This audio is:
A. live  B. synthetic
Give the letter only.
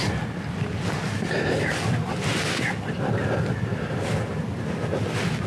A